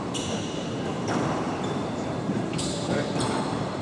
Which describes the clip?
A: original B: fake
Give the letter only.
B